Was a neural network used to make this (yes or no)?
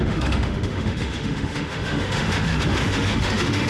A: yes